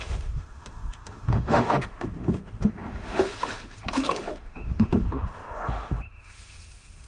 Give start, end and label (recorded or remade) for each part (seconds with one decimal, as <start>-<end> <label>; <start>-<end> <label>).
0.0-7.1 remade